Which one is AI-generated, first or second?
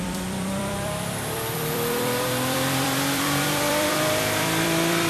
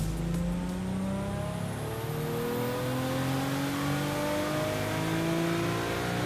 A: first